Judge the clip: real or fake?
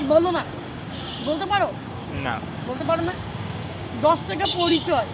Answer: fake